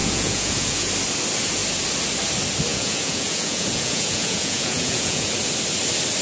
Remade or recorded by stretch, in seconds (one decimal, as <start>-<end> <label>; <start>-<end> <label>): 0.0-0.9 remade; 0.9-2.7 recorded; 2.7-5.3 remade; 5.3-6.2 recorded